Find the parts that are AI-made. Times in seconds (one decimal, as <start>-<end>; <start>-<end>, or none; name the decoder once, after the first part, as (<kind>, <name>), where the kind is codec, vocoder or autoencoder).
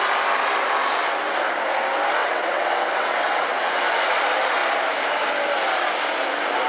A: 2.2-3.8 (vocoder, WaveNeXt)